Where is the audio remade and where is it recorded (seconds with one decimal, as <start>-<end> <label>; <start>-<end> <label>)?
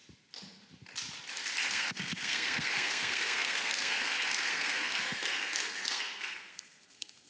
0.0-1.7 recorded; 1.7-7.3 remade